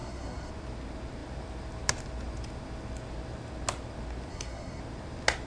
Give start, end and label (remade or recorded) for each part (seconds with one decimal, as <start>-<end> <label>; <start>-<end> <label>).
0.0-0.5 remade; 0.5-4.3 recorded; 4.3-4.8 remade; 4.8-5.5 recorded